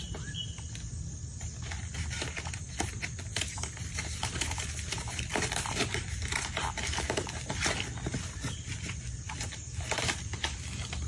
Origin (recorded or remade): recorded